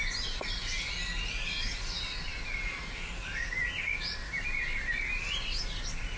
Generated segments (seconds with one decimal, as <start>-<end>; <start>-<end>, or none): none

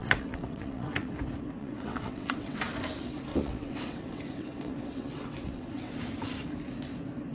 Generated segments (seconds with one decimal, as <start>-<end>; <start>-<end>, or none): 0.0-1.1; 1.6-2.6; 3.3-6.0